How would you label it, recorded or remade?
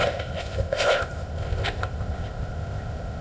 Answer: remade